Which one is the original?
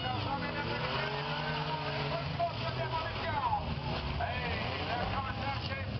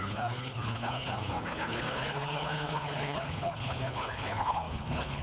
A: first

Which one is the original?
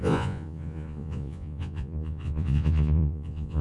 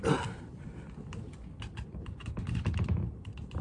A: second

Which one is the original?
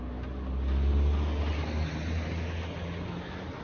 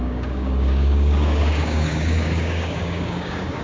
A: first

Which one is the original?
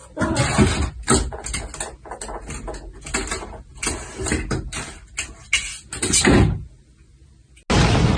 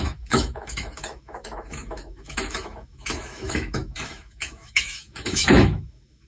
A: first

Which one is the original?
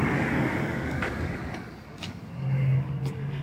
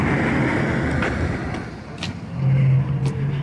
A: second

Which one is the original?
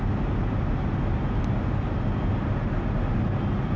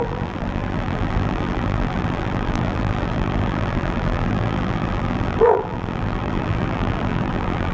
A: first